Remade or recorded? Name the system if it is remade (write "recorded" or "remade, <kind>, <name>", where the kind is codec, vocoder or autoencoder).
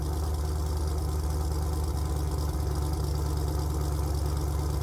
recorded